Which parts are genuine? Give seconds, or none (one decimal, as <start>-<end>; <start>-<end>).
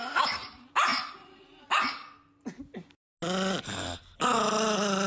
0.0-5.1